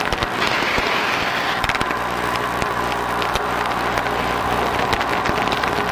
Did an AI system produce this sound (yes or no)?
no